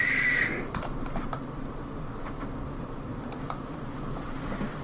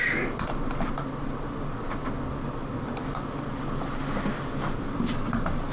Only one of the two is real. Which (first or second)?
second